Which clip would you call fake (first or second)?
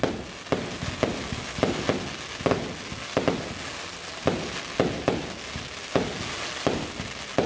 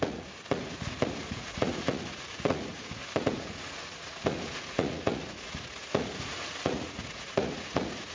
second